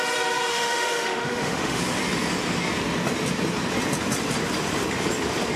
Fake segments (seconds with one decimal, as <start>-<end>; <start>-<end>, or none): 0.5-1.8